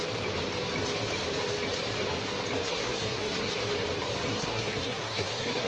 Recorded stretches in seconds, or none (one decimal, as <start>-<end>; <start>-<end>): 0.0-2.6; 3.5-4.3

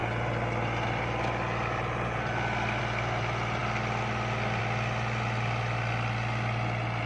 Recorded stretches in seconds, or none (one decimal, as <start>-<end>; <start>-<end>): 0.0-7.1

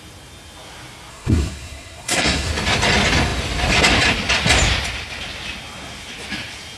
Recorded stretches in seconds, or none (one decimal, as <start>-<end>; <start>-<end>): 0.0-1.1; 2.5-6.8

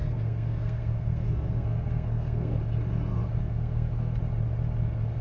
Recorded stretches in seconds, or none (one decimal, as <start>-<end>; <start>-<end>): 2.6-3.4; 4.2-5.2

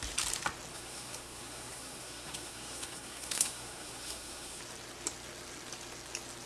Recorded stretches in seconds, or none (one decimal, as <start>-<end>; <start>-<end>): 0.0-0.7; 4.6-6.5

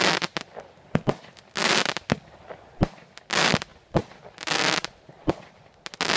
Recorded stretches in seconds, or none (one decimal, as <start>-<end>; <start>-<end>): 0.0-6.2

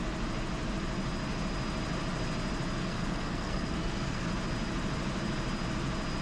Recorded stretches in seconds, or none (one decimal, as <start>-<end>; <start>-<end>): 0.0-2.8; 4.3-6.2

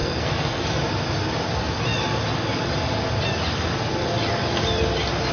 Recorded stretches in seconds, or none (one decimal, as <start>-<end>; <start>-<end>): 0.6-5.3